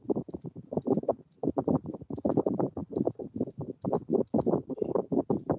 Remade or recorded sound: recorded